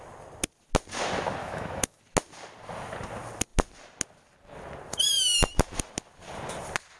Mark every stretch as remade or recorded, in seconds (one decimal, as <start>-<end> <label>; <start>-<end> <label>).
0.0-1.4 recorded; 1.4-2.0 remade; 2.0-7.0 recorded